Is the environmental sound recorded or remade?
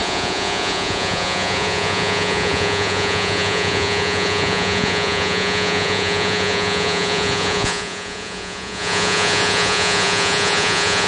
remade